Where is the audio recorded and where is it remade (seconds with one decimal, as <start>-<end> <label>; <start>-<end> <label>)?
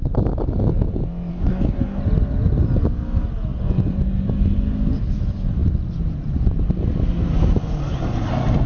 0.0-1.3 recorded; 1.3-2.0 remade; 2.0-8.7 recorded